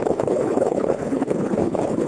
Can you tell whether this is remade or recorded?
remade